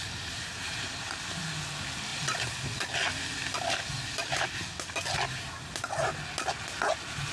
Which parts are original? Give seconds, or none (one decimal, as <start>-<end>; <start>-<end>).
1.2-7.3